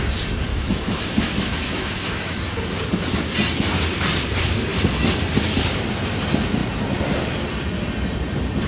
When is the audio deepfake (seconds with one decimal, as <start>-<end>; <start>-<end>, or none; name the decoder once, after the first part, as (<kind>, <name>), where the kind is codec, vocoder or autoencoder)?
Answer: 0.5-2.4 (autoencoder, DAC-VAE)